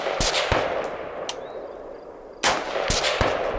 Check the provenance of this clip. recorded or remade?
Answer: recorded